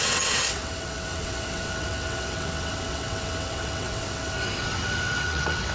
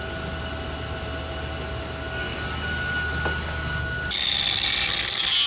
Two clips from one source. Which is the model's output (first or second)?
first